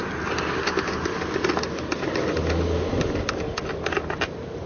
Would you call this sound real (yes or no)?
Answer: yes